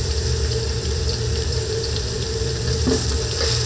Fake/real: fake